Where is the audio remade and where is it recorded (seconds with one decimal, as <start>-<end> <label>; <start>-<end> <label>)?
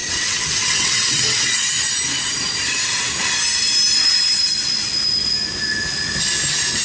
0.0-1.7 remade; 1.7-6.8 recorded